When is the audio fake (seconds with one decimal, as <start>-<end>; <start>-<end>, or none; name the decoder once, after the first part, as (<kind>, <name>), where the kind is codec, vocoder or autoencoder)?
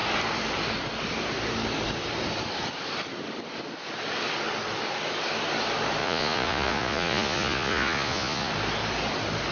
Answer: 6.0-8.5 (vocoder, Vocos)